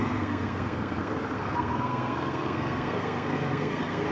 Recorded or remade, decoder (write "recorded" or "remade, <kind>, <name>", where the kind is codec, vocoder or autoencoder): remade, codec, SNAC